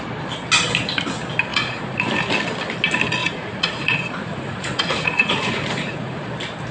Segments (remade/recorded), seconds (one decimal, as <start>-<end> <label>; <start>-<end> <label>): 0.0-1.5 recorded; 1.5-2.1 remade; 2.1-3.2 recorded; 3.2-6.3 remade; 6.3-6.7 recorded